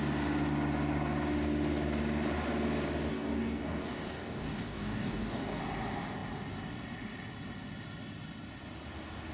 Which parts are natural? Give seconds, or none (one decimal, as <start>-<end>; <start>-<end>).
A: 0.0-3.1; 5.6-9.3